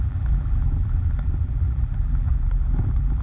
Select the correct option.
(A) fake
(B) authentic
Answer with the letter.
A